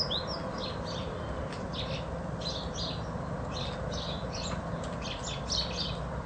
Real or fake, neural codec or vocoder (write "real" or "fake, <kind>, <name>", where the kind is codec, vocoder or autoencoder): real